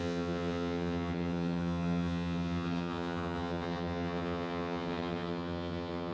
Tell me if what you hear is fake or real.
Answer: fake